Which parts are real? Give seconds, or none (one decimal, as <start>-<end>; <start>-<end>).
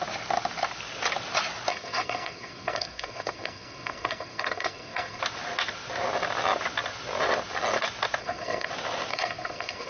0.0-1.7; 5.2-8.2; 8.7-9.1